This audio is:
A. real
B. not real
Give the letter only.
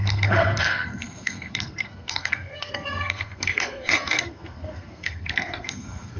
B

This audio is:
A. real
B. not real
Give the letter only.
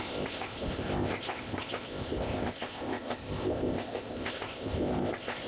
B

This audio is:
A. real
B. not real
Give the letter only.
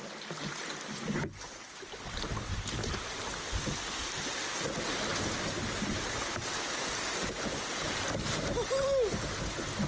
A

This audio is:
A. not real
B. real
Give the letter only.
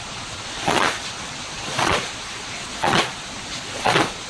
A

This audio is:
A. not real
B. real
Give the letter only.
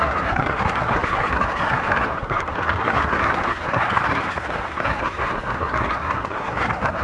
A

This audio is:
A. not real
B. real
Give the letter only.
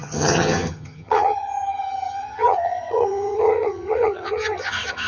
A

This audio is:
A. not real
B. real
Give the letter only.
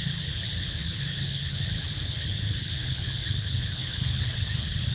A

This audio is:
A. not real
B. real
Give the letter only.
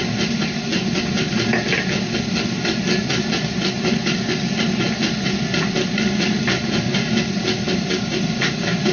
B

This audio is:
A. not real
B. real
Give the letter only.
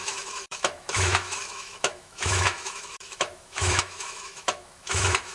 A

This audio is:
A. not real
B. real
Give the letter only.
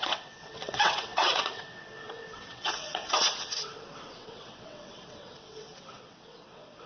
A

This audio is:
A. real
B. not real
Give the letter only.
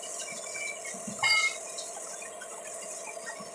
A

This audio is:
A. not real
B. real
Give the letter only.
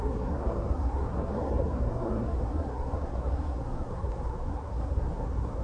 A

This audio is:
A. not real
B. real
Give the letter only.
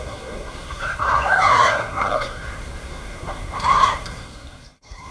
A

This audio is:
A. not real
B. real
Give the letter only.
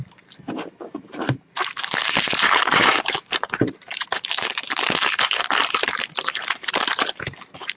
A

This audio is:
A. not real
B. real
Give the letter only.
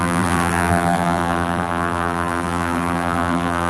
A